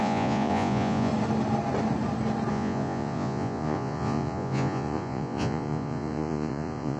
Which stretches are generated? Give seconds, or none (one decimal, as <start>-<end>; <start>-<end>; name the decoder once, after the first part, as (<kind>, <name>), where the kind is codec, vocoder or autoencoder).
0.0-1.1 (vocoder, Vocos); 2.5-7.0